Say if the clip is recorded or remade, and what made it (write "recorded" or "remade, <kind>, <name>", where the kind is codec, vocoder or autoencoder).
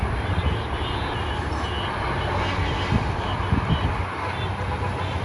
recorded